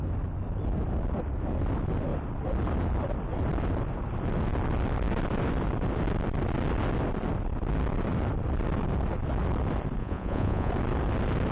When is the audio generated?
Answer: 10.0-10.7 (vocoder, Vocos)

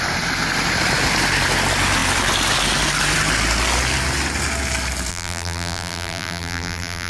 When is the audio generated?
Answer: 5.1-7.1 (vocoder, BigVGAN v2)